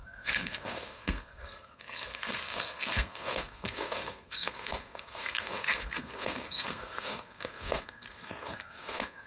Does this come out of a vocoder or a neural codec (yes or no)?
yes